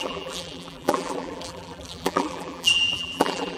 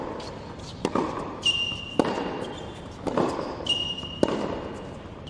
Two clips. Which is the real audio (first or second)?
second